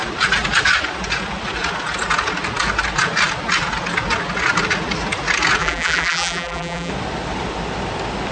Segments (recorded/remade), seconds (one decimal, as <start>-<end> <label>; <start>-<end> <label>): 0.0-5.6 recorded; 5.6-6.9 remade; 6.9-8.3 recorded